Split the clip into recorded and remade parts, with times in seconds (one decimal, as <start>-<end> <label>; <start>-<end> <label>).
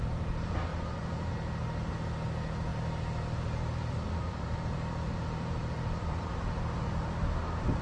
0.0-0.7 recorded; 0.7-1.3 remade; 1.3-2.7 recorded; 2.7-6.3 remade; 6.3-7.8 recorded